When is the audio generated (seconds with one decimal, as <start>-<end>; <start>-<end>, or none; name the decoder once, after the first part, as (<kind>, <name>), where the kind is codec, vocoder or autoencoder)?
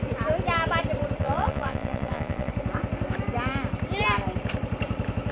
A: 1.2-2.5 (vocoder, Vocos)